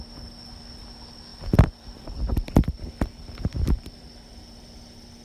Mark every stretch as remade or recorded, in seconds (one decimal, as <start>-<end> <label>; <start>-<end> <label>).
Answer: 0.0-1.3 recorded; 1.3-4.4 remade; 4.4-5.2 recorded